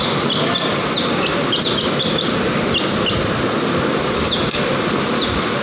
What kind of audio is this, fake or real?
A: real